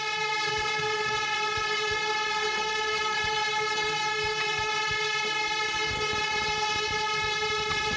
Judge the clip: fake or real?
real